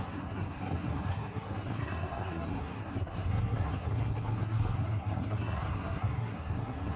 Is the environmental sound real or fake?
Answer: fake